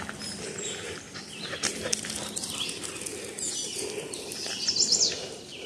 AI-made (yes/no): no